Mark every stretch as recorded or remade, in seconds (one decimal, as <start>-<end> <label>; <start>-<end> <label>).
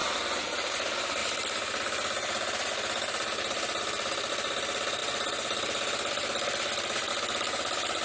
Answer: 0.0-0.7 remade; 0.7-8.0 recorded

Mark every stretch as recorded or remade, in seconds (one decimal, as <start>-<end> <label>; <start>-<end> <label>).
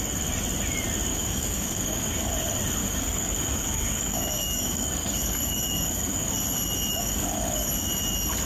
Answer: 0.0-1.1 recorded; 1.1-2.3 remade; 2.3-2.8 recorded; 2.8-6.3 remade; 6.3-6.9 recorded; 6.9-7.7 remade; 7.7-8.5 recorded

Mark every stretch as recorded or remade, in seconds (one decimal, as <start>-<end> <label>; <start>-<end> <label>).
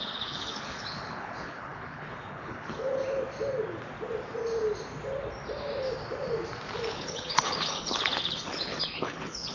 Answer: 0.0-2.9 remade; 2.9-6.9 recorded; 6.9-9.5 remade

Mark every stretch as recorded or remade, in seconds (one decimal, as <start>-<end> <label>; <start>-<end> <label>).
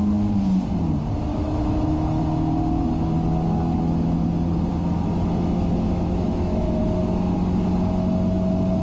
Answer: 0.0-1.3 recorded; 1.3-2.2 remade; 2.2-4.7 recorded; 4.7-6.8 remade; 6.8-8.8 recorded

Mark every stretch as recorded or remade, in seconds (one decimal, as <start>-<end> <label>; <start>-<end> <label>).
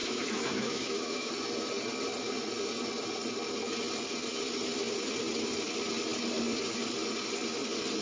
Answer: 0.0-1.3 remade; 1.3-8.0 recorded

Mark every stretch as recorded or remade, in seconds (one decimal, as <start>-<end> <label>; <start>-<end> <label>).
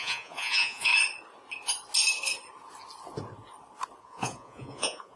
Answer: 0.0-0.9 remade; 0.9-4.0 recorded; 4.0-5.2 remade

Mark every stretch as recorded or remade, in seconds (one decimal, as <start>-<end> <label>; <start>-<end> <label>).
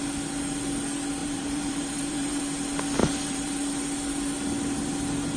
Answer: 0.0-1.2 recorded; 1.2-2.4 remade; 2.4-3.0 recorded; 3.0-3.5 remade; 3.5-5.4 recorded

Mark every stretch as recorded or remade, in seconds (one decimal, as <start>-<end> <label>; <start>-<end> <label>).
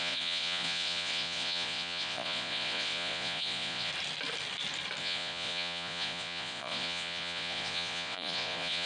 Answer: 0.0-3.9 remade; 3.9-5.0 recorded; 5.0-8.9 remade